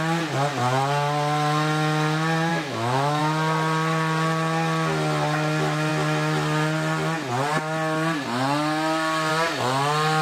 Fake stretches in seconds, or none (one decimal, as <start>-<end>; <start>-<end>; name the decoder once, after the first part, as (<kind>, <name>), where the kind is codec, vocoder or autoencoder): 2.5-3.2 (autoencoder, DAC-VAE)